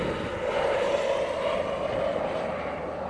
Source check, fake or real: fake